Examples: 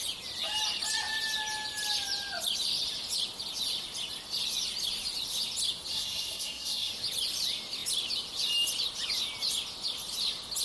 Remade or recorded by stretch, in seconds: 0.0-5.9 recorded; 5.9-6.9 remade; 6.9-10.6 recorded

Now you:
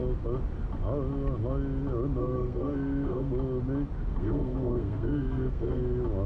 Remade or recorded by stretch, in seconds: 0.0-2.2 recorded; 2.2-3.3 remade; 3.3-4.1 recorded; 4.1-5.8 remade; 5.8-6.3 recorded

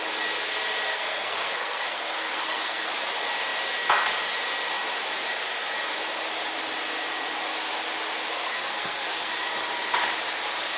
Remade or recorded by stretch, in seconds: 0.0-0.9 recorded; 0.9-2.9 remade; 2.9-8.3 recorded; 8.3-9.3 remade; 9.3-10.8 recorded